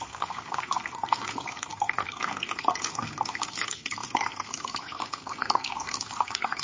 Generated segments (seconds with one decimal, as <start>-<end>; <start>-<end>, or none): 0.0-6.6